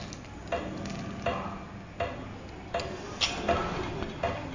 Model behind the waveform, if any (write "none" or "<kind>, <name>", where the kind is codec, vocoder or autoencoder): none